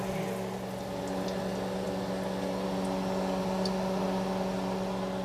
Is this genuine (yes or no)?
yes